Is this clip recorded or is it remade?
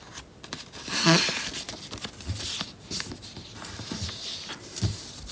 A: recorded